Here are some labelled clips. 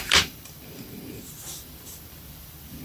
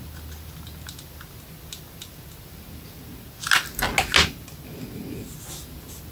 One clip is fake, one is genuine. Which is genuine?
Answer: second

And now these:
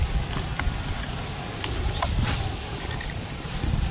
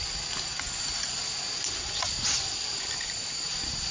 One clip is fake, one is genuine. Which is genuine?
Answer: second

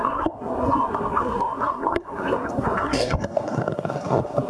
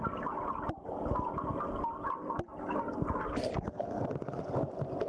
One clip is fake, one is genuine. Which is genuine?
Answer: second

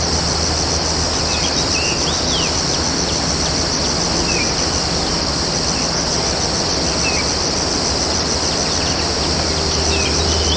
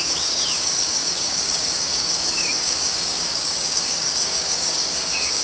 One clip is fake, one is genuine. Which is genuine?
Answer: first